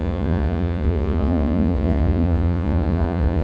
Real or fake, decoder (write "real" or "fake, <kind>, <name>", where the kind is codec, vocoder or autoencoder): fake, vocoder, Vocos